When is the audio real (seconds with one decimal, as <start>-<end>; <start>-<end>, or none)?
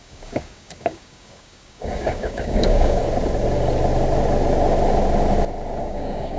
3.0-5.8